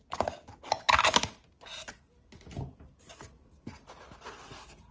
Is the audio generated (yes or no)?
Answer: no